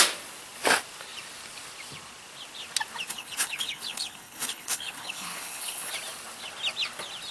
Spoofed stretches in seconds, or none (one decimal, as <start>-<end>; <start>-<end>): 3.1-5.9

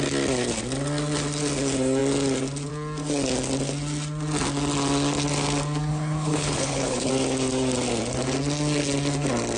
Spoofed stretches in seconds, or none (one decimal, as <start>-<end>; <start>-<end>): 5.9-7.1

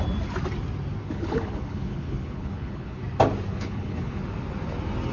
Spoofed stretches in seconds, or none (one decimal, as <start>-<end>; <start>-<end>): 1.0-3.0; 3.5-4.2

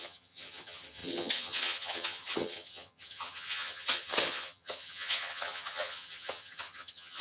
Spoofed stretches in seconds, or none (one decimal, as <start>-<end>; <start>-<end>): 0.0-7.2

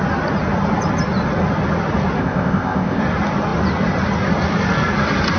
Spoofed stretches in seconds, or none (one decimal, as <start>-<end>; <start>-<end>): 2.2-3.0

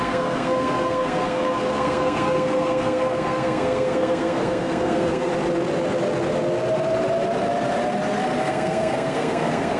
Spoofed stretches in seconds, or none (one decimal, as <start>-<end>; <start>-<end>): 0.0-5.3; 8.4-9.8

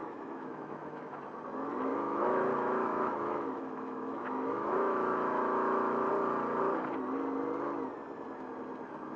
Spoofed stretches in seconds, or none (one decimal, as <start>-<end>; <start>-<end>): 0.0-1.2; 1.9-6.1

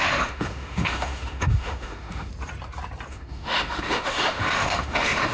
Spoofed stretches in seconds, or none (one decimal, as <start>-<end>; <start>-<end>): 0.0-2.3; 3.1-5.3